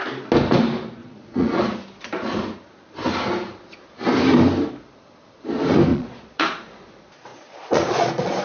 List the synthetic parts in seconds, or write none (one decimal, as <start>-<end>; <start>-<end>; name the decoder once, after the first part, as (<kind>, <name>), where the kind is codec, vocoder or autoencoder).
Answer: 1.0-1.6 (vocoder, Vocos); 5.9-6.6; 7.3-8.4